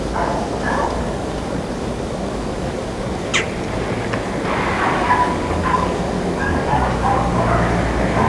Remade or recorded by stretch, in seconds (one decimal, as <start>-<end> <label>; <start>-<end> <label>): 0.0-3.3 remade; 3.3-4.7 recorded; 4.7-8.3 remade